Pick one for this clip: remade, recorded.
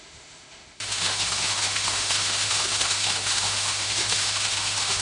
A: remade